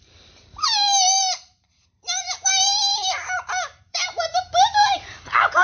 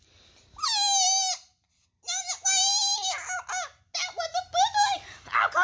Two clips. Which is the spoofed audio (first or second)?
first